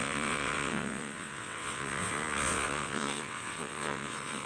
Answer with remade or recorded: remade